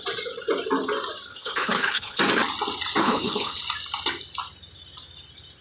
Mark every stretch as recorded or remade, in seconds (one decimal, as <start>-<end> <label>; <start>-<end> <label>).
0.0-1.3 recorded; 1.3-2.2 remade; 2.2-3.0 recorded; 3.0-3.6 remade; 3.6-5.6 recorded